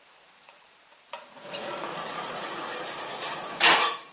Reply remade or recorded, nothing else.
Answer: remade